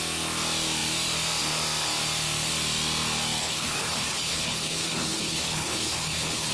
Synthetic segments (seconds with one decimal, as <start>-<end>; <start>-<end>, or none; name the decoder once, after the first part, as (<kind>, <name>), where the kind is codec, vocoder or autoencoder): 3.4-6.5 (codec, HILCodec)